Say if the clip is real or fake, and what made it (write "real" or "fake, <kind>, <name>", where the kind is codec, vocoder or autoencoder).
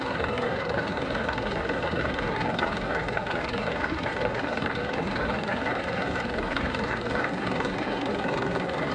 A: fake, codec, SNAC